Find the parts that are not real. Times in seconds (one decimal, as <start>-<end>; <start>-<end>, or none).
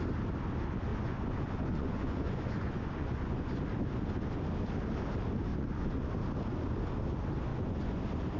0.9-3.6; 5.5-6.1; 7.5-8.0